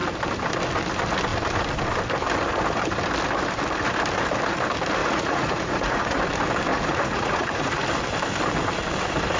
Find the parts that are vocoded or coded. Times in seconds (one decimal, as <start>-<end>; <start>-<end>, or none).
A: 5.0-6.2; 6.7-7.8